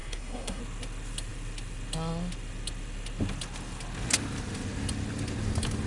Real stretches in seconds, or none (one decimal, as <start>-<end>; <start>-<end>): 0.6-5.9